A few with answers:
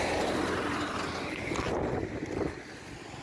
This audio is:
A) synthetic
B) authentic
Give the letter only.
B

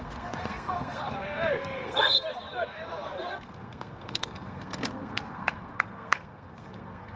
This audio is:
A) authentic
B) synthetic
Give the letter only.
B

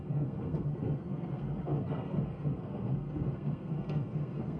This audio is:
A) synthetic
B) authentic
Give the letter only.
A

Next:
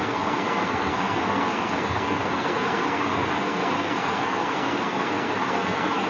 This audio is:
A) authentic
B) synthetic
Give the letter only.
B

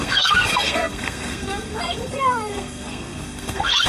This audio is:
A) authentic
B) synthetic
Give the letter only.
B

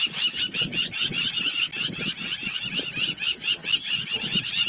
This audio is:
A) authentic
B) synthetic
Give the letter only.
A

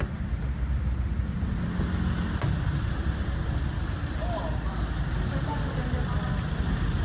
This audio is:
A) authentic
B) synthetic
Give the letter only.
A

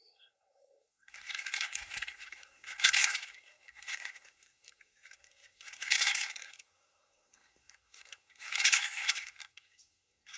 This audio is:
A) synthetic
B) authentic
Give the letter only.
A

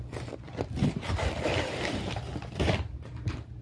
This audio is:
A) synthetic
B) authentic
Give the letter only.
B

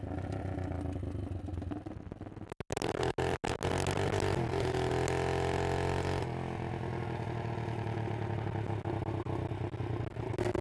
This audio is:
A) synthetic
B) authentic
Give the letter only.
B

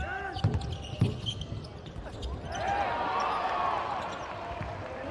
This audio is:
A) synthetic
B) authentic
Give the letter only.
B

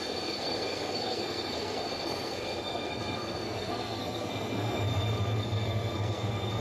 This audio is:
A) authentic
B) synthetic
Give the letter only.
B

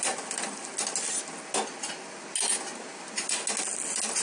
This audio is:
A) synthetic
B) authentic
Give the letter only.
B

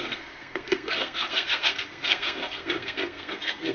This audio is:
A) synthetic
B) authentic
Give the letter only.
A